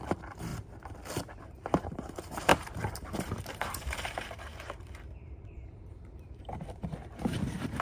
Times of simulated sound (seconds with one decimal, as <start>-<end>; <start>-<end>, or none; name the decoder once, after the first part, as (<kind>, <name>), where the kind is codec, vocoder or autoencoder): 0.0-0.5 (vocoder, BigVGAN v2); 1.4-7.8